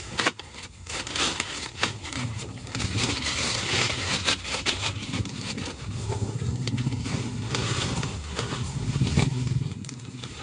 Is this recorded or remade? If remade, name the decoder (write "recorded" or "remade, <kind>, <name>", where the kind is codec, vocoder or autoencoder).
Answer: remade, codec, SNAC